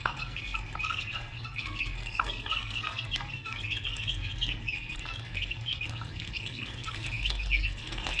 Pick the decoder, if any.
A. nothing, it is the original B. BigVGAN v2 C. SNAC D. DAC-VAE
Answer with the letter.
C